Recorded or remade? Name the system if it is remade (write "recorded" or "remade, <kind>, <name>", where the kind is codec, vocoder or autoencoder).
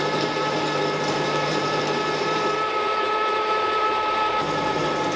remade, vocoder, BigVGAN v2